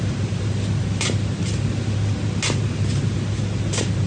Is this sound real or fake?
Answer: real